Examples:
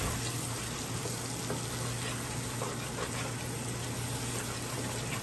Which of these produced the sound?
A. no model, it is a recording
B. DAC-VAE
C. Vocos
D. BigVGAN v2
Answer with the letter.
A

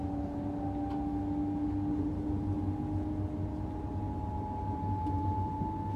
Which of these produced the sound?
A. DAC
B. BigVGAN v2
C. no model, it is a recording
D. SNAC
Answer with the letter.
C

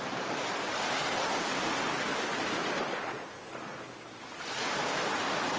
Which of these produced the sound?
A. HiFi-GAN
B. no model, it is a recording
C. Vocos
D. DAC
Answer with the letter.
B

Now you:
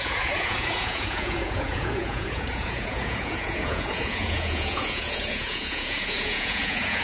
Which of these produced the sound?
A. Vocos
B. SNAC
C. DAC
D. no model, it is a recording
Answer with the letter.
A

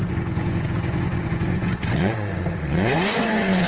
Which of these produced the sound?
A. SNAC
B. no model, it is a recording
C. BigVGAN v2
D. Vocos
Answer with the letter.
D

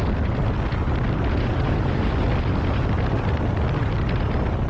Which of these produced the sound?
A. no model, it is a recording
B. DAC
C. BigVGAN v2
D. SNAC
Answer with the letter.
A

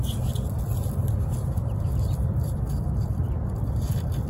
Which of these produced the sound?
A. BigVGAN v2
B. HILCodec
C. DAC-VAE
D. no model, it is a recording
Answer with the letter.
D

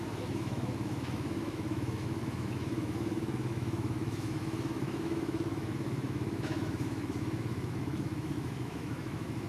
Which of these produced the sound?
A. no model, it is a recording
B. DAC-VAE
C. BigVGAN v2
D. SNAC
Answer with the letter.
B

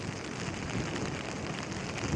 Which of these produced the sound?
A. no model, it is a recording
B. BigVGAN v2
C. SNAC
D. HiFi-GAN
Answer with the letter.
A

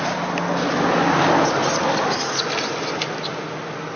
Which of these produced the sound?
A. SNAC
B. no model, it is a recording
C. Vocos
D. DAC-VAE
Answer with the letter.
B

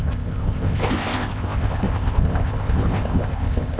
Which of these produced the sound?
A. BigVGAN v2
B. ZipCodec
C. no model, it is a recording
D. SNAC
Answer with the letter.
B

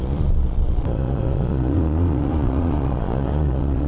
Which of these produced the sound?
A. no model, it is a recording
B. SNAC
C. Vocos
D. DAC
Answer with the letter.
C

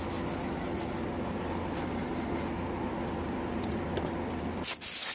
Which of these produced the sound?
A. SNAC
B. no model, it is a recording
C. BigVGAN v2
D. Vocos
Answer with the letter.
B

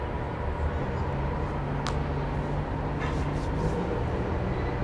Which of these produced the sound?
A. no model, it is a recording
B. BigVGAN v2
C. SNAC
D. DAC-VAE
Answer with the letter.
A